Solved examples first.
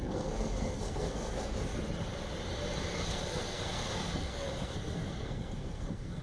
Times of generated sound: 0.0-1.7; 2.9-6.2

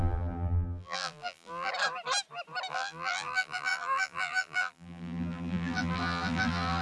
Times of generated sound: 0.0-1.7; 2.7-6.8

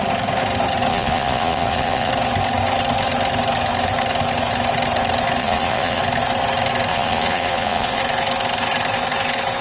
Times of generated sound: 0.9-2.1; 5.4-6.0; 6.9-8.0

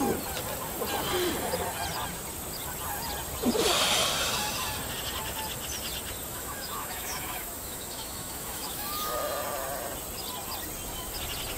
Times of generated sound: 6.3-9.2

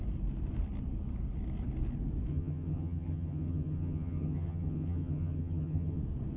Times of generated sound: 2.3-6.0